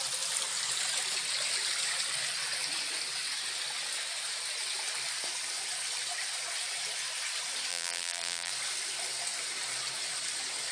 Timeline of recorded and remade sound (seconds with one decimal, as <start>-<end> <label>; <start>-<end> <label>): 0.0-7.7 recorded; 7.7-8.5 remade; 8.5-10.7 recorded